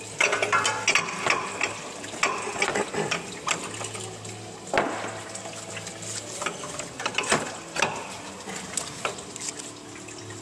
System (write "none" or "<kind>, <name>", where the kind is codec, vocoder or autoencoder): none